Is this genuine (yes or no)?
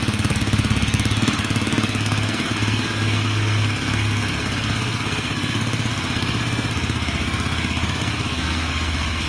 no